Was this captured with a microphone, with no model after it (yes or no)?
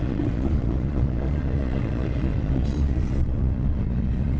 no